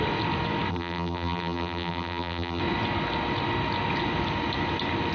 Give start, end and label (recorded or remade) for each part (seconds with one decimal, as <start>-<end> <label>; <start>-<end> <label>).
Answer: 0.0-0.7 recorded; 0.7-2.6 remade; 2.6-5.1 recorded